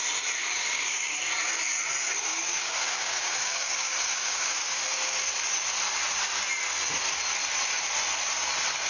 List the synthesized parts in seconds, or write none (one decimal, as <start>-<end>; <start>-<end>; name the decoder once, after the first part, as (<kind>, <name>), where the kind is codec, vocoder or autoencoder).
0.4-1.3 (codec, DAC); 2.3-4.8